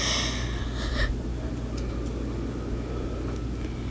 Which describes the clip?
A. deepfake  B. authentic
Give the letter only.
B